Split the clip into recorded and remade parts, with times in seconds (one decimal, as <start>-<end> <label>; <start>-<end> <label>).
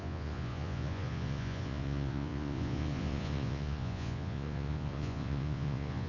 0.0-6.1 remade